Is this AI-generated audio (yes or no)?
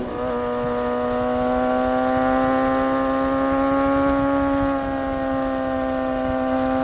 no